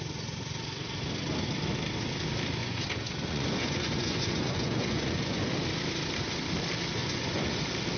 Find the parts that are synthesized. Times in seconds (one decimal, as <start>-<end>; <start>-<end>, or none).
2.6-5.4; 7.0-7.6